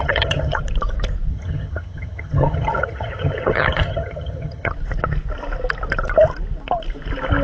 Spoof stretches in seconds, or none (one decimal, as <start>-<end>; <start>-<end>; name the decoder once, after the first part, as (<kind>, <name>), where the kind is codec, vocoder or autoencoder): 0.0-0.6 (vocoder, HiFi-GAN); 1.3-4.7